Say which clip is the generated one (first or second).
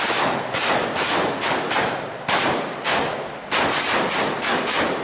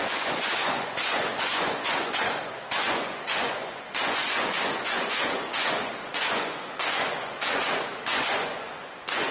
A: second